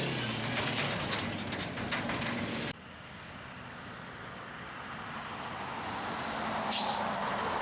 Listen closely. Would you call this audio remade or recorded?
recorded